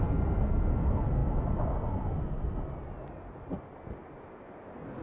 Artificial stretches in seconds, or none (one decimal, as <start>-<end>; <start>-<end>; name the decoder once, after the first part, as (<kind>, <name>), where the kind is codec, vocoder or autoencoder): none